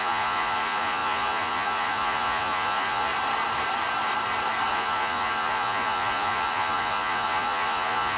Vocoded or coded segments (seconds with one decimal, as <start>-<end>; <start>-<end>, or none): 0.0-3.1; 4.7-8.2